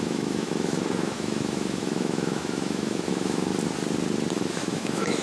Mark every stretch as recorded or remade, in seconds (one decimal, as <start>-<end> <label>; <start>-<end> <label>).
0.0-3.5 remade; 3.5-4.3 recorded; 4.3-5.2 remade